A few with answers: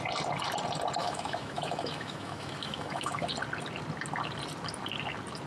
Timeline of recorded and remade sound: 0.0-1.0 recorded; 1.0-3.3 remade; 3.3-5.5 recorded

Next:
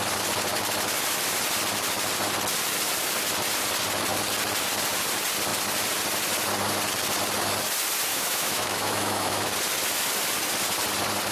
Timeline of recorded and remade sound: 0.0-8.1 recorded; 8.1-9.5 remade; 9.5-11.3 recorded

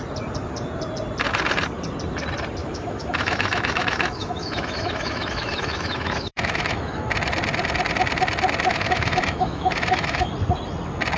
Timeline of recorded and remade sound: 0.0-2.6 recorded; 2.6-7.0 remade; 7.0-8.7 recorded; 8.7-10.3 remade; 10.3-11.2 recorded

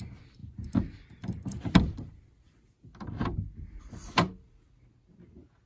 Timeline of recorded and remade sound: 0.0-5.7 recorded